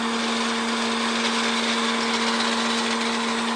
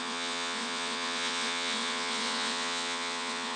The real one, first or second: first